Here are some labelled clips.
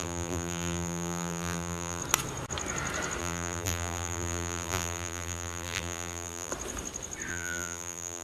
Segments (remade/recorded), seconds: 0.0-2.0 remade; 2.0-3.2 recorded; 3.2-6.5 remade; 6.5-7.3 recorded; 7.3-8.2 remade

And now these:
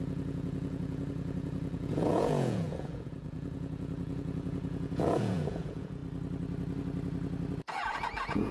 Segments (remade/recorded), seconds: 0.0-6.0 remade; 6.0-7.6 recorded; 7.6-8.5 remade

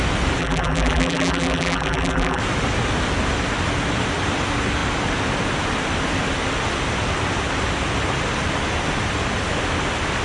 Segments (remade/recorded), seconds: 0.0-0.4 recorded; 0.4-2.4 remade; 2.4-10.2 recorded

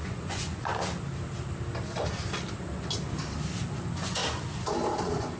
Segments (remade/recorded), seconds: 0.0-0.7 remade; 0.7-3.8 recorded; 3.8-4.2 remade; 4.2-5.0 recorded; 5.0-5.4 remade

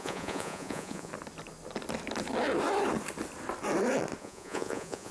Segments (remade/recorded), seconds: 0.0-1.1 remade; 1.1-4.2 recorded; 4.2-5.1 remade

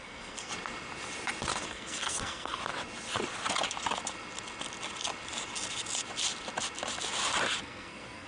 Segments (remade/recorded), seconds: 0.0-0.5 remade; 0.5-1.7 recorded; 1.7-2.6 remade; 2.6-7.6 recorded; 7.6-8.3 remade